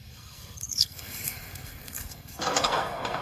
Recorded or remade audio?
remade